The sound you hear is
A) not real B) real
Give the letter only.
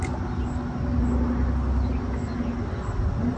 B